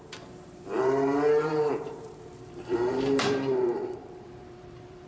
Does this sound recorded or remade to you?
remade